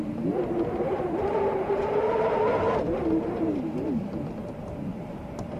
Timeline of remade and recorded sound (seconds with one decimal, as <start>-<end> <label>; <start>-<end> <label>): 0.0-2.5 remade; 2.5-3.2 recorded; 3.2-5.6 remade